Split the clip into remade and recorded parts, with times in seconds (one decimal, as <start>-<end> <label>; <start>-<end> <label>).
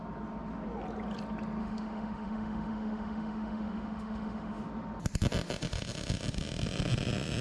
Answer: 0.0-1.6 recorded; 1.6-4.6 remade; 4.6-7.4 recorded